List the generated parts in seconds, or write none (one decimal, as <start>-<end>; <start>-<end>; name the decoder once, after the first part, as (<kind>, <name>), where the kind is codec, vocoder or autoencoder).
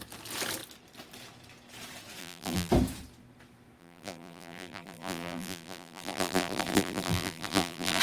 2.2-2.7 (vocoder, BigVGAN v2); 3.8-8.0